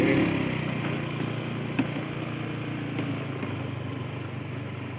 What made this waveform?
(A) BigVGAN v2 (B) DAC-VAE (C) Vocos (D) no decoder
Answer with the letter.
D